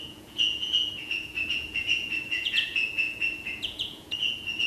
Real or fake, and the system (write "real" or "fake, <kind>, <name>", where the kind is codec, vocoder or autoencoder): fake, vocoder, Vocos